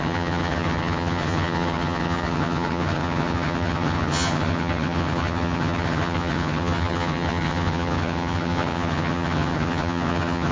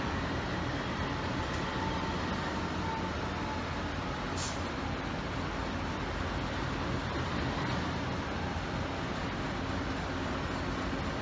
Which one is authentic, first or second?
second